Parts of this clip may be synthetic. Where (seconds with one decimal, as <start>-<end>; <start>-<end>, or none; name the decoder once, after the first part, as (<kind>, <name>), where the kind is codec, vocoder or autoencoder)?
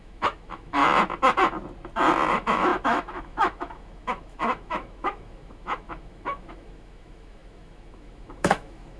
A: 0.0-0.8 (autoencoder, DAC-VAE); 2.3-9.0